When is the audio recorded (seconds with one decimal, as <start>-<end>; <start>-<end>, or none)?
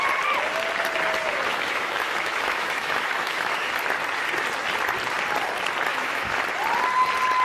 0.0-1.5; 3.7-5.9; 6.4-7.4